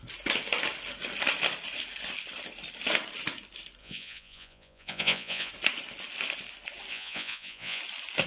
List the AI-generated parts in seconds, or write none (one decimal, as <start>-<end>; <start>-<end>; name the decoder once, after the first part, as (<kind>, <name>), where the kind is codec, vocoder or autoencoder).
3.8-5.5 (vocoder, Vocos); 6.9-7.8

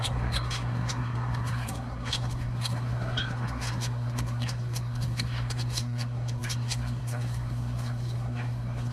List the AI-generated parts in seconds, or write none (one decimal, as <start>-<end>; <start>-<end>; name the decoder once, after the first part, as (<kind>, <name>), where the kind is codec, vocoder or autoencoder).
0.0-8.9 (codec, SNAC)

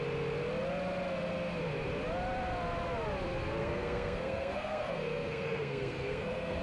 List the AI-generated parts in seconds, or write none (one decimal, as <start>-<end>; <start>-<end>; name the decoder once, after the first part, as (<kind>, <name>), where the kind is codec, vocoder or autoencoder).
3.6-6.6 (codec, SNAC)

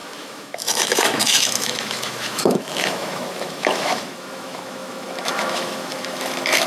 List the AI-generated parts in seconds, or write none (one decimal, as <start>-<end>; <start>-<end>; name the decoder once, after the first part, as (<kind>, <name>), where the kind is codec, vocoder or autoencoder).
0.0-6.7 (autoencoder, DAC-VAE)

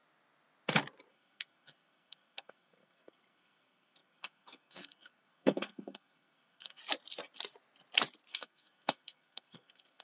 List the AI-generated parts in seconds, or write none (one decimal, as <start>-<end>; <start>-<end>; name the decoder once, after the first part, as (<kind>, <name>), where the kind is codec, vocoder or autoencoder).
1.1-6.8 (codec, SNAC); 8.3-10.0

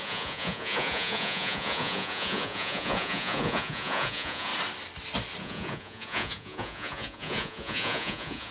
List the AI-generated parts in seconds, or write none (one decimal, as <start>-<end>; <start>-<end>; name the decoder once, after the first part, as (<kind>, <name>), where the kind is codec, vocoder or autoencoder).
0.0-4.5 (vocoder, Vocos); 5.4-8.5